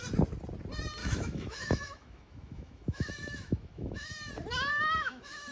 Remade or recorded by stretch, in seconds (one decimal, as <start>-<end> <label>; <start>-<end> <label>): 0.0-1.0 recorded; 1.0-4.3 remade; 4.3-4.7 recorded; 4.7-5.5 remade